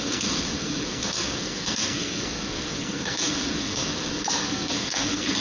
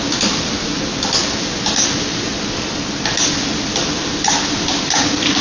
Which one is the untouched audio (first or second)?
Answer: second